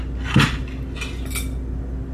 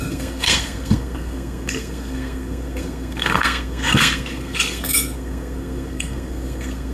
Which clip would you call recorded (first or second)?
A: first